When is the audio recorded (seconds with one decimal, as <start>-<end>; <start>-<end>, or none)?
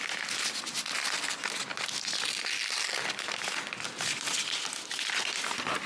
0.0-5.9